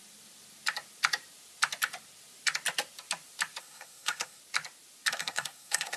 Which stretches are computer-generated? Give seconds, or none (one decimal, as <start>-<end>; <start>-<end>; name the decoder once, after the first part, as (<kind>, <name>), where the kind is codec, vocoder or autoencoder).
3.6-4.4 (codec, SNAC); 5.1-6.0